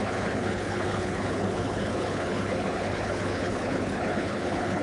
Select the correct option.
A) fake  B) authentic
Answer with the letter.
A